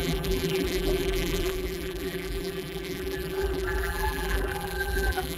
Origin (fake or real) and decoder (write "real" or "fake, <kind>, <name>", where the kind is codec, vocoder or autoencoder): fake, vocoder, BigVGAN v2